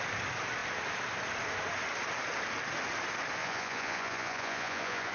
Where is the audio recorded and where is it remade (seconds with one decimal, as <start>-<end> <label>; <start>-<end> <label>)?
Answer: 0.0-3.4 recorded; 3.4-5.1 remade